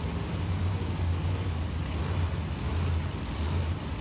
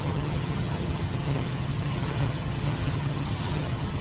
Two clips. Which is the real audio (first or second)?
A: first